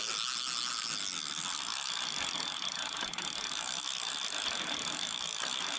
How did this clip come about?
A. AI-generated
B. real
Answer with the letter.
B